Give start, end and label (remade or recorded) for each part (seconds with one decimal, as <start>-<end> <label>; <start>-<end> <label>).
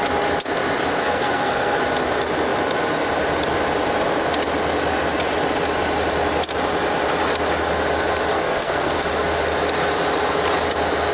0.0-1.0 recorded; 1.0-1.8 remade; 1.8-8.3 recorded; 8.3-9.1 remade; 9.1-11.1 recorded